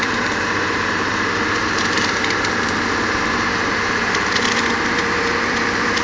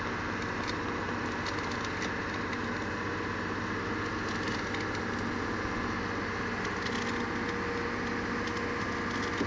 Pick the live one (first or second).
second